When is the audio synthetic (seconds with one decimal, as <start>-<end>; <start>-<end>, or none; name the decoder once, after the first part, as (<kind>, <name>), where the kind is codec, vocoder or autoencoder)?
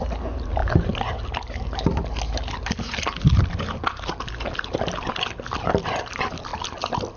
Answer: none